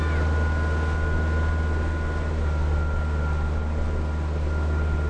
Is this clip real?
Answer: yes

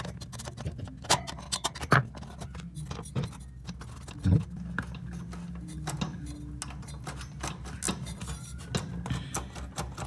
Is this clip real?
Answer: yes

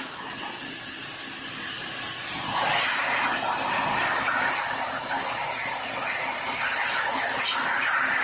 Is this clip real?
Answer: yes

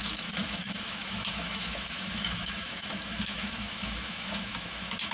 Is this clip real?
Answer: no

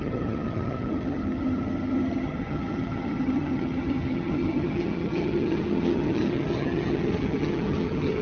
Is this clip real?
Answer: no